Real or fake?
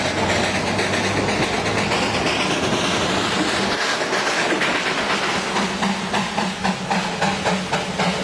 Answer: real